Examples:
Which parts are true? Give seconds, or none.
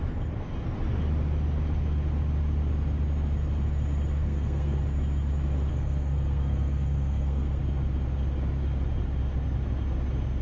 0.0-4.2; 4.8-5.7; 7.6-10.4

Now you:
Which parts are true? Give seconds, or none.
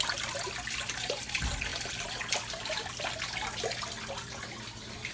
0.0-5.1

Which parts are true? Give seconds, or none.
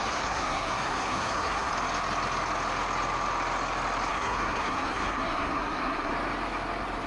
1.7-4.1; 6.1-7.1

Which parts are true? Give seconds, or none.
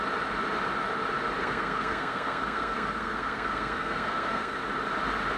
0.0-1.4; 4.6-5.4